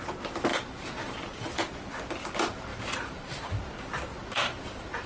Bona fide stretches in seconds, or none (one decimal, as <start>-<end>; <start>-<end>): 0.0-0.5; 1.5-2.7; 3.5-4.2